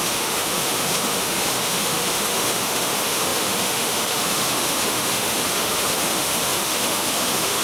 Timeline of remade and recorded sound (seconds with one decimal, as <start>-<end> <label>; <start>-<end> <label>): 0.0-7.6 remade